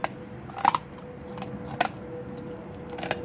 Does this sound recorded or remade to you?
recorded